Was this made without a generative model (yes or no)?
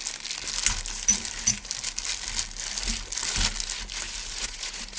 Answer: yes